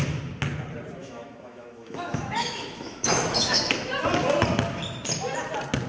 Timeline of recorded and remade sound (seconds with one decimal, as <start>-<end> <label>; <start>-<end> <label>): 0.0-1.0 recorded; 1.0-3.9 remade; 3.9-5.9 recorded